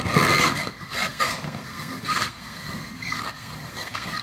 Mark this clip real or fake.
fake